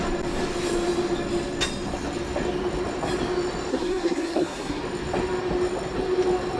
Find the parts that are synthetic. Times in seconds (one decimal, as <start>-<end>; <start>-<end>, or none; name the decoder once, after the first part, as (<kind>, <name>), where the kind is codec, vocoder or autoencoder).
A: 3.7-4.8 (codec, SNAC)